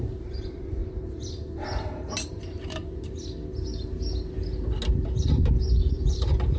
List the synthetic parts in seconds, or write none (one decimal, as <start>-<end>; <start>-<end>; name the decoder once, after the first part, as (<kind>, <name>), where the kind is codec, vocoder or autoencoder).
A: 0.0-0.8 (vocoder, BigVGAN v2); 1.7-2.8; 5.9-6.6